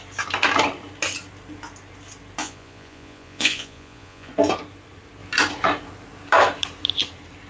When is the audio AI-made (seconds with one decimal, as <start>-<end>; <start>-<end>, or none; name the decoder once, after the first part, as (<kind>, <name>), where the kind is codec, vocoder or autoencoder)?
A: 2.4-4.3 (vocoder, Vocos)